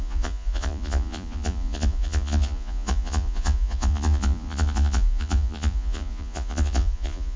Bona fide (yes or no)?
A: no